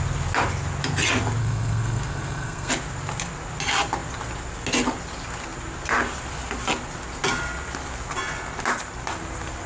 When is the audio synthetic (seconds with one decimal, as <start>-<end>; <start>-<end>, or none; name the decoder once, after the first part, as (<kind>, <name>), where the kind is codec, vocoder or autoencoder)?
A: 1.4-2.7 (codec, SNAC)